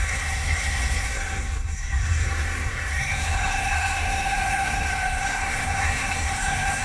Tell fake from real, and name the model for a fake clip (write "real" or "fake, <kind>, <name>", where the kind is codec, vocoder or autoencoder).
fake, codec, SNAC